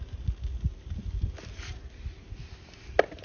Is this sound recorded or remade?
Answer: recorded